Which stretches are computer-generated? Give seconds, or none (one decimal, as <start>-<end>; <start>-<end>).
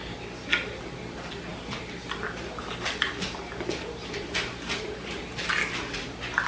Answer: none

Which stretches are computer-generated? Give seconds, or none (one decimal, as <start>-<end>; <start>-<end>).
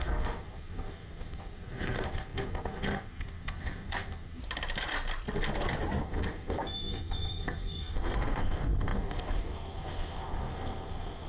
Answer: 0.0-4.4; 6.0-11.3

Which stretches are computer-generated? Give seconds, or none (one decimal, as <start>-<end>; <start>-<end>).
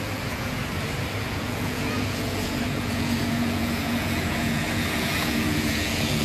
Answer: 0.0-0.6; 1.2-6.2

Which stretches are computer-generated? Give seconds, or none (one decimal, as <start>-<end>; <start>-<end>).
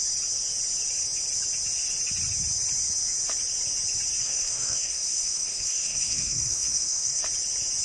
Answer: 4.2-7.2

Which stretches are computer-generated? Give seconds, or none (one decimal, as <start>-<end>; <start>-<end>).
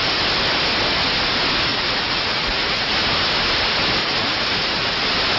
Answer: 1.7-2.9; 4.0-5.0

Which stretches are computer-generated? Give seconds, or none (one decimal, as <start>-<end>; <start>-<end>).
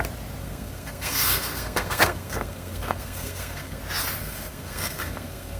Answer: 0.4-3.8; 4.2-5.6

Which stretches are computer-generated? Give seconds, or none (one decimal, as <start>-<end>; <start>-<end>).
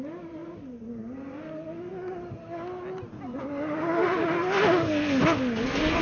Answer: none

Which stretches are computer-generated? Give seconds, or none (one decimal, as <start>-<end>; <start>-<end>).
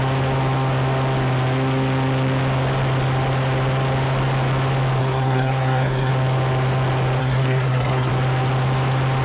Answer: 5.0-6.1; 7.2-8.1